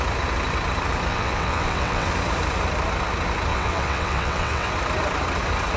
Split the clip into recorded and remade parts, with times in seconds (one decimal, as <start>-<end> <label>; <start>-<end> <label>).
0.0-1.1 recorded; 1.1-2.1 remade; 2.1-3.5 recorded; 3.5-4.7 remade; 4.7-5.8 recorded